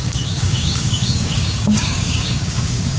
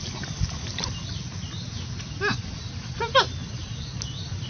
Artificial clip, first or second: first